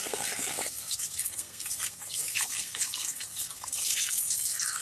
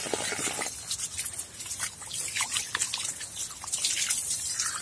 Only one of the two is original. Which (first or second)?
second